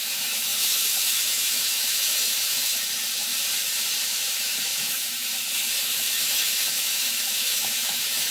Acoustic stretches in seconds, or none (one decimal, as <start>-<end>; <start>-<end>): 3.3-4.0

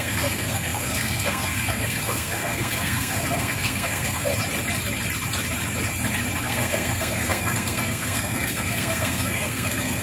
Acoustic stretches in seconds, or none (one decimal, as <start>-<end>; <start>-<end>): 4.3-6.4

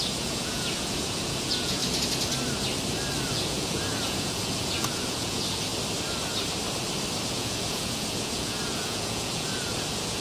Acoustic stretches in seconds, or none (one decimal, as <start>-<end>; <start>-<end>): 1.8-3.3; 5.7-7.3

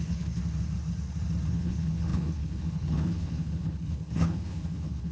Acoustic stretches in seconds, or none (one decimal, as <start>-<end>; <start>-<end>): 0.4-1.5

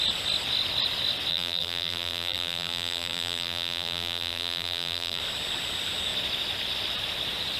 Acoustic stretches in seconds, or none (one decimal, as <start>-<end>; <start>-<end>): 0.0-1.3; 5.2-7.6

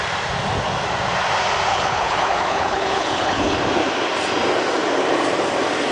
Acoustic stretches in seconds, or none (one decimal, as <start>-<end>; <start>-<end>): 0.0-1.7; 3.6-5.9